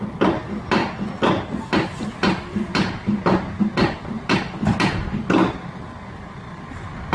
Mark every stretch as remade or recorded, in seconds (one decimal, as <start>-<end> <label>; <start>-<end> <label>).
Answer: 0.0-7.1 recorded